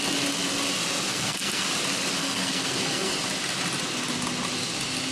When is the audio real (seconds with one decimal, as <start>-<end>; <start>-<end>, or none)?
0.0-1.1; 1.6-2.2; 3.1-5.1